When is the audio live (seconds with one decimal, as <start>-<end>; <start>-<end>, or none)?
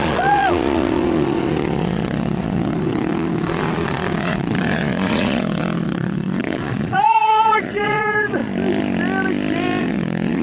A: 8.4-9.8